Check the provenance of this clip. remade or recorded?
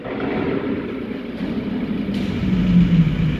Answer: recorded